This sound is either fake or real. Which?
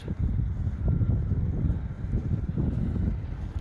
real